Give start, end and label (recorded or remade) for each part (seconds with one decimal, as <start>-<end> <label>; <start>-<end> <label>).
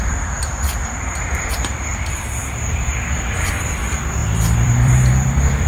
0.0-1.9 remade; 1.9-3.2 recorded; 3.2-5.7 remade